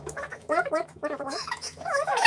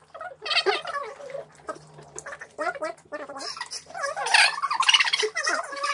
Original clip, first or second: second